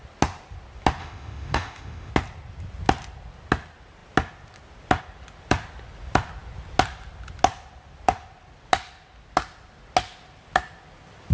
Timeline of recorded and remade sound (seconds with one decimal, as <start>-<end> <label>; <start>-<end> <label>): 0.0-1.0 recorded; 1.0-2.1 remade; 2.1-11.3 recorded